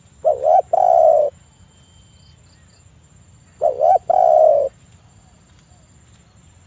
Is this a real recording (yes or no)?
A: yes